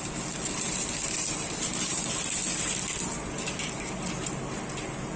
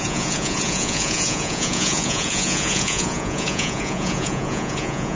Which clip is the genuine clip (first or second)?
first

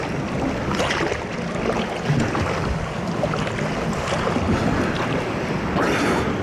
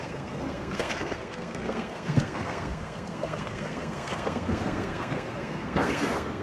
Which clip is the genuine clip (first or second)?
first